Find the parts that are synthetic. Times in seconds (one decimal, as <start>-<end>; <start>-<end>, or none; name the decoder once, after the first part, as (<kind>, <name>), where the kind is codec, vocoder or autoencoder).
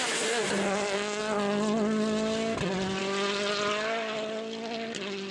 none